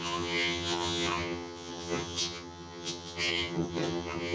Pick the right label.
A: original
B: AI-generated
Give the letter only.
B